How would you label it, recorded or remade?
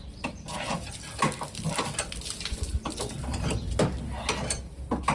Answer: recorded